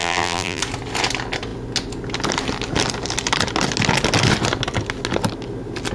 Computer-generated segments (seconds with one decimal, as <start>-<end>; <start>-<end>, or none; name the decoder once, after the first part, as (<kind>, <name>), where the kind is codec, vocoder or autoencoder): 0.0-0.6 (vocoder, BigVGAN v2)